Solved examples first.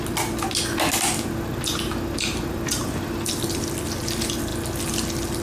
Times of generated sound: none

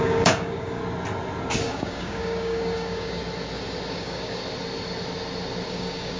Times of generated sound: 0.0-0.8 (codec, DAC); 1.6-3.2; 3.9-4.4; 5.7-6.2

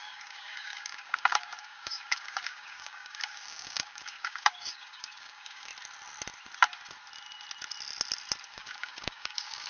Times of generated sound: 0.0-5.7 (codec, DAC); 8.4-9.7

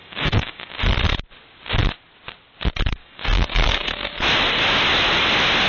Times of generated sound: 0.0-0.7 (codec, DAC); 3.0-4.2